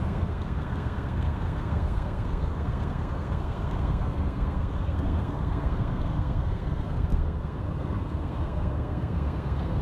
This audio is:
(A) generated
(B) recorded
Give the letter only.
A